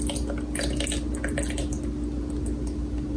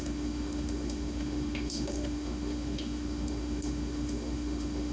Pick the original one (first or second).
first